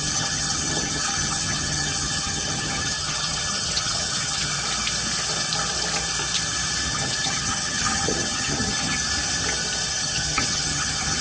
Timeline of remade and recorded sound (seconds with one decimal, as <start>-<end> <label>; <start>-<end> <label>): 0.0-4.5 remade; 4.5-6.9 recorded; 6.9-9.0 remade; 9.0-9.9 recorded; 9.9-11.2 remade